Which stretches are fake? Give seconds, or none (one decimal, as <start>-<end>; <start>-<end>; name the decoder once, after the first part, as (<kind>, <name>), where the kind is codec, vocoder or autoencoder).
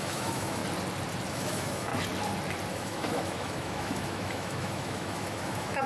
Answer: 0.0-0.6 (autoencoder, DAC-VAE); 1.3-1.9; 2.7-5.9